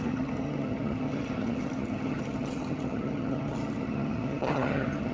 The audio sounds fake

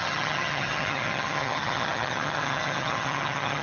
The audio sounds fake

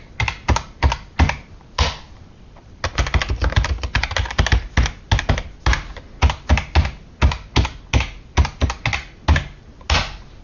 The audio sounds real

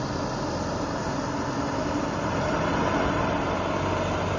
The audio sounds real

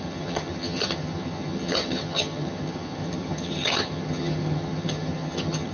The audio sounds fake